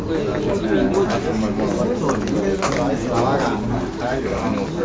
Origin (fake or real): real